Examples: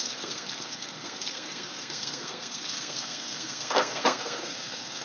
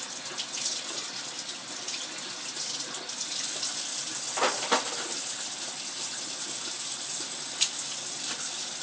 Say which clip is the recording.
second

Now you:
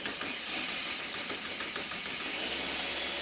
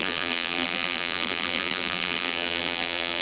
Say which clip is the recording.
first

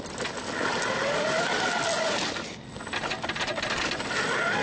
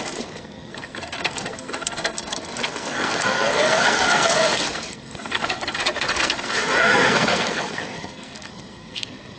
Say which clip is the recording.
first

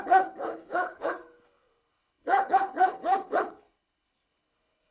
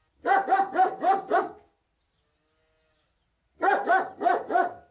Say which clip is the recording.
second